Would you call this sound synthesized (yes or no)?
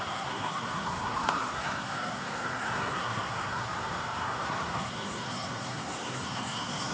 yes